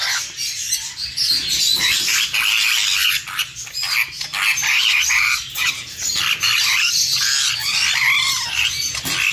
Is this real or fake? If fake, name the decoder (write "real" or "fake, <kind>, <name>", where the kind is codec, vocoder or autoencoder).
real